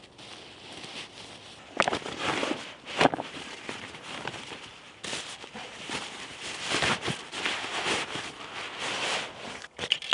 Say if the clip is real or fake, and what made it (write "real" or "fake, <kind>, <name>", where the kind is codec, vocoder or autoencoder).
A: real